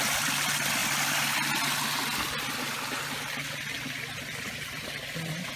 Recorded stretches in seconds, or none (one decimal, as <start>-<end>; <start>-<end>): 0.8-4.2